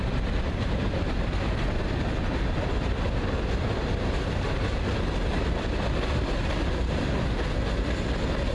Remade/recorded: recorded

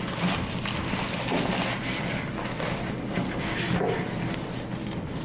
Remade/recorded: recorded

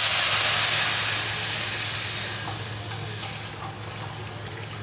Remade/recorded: recorded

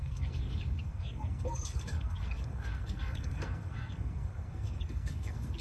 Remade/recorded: remade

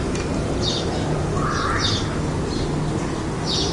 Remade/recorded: recorded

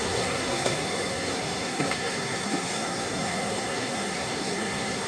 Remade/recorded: remade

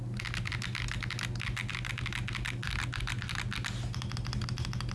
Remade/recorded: recorded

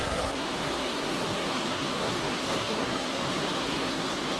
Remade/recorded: remade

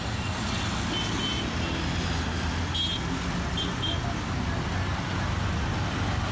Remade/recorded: recorded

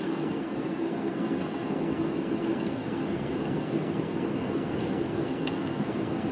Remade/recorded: remade